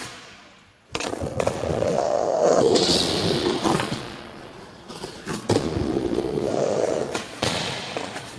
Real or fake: fake